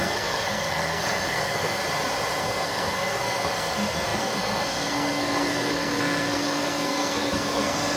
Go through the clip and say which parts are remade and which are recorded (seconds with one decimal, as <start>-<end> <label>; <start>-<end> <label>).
0.0-1.8 remade; 1.8-2.4 recorded; 2.4-8.0 remade